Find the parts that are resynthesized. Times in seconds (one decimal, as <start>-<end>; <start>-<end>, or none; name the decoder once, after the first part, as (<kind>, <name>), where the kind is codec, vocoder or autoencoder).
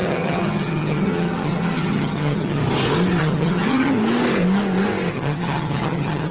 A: 0.0-2.6 (vocoder, HiFi-GAN); 3.2-4.0; 5.1-6.3